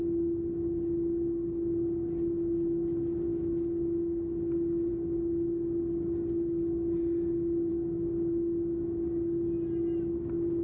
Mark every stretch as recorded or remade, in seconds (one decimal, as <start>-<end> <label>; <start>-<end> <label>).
0.0-10.6 recorded